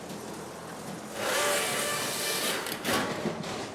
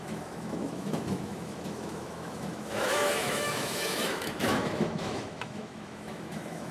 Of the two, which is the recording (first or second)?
first